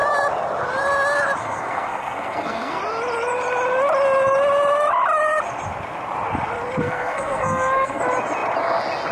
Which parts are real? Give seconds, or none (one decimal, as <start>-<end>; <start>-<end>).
0.0-1.4; 2.8-6.8; 8.0-9.1